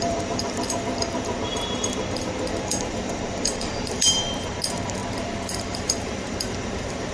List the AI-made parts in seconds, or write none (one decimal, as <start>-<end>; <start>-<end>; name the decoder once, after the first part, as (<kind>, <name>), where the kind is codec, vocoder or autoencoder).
0.0-7.1 (vocoder, BigVGAN v2)